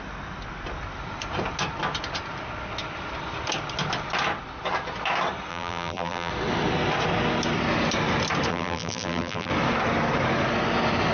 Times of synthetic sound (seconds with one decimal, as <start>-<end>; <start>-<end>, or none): 5.5-6.3; 8.5-9.5